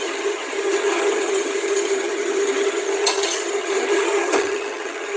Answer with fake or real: fake